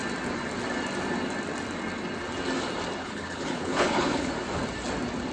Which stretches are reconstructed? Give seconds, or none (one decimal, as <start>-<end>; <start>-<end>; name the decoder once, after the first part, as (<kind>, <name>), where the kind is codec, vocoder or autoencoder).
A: 3.0-4.3 (codec, HILCodec)